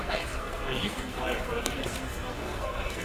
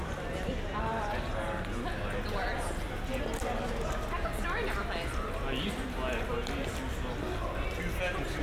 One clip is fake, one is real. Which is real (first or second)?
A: second